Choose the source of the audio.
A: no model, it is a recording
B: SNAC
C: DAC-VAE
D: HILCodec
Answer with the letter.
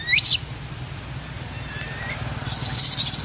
A